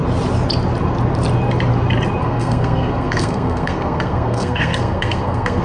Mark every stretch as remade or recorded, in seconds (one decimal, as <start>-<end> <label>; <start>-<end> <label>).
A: 0.0-2.2 recorded; 2.2-5.6 remade